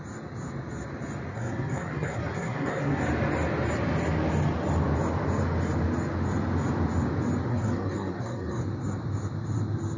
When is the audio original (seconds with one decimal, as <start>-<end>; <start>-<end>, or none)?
0.0-1.3; 3.0-7.5; 8.6-10.0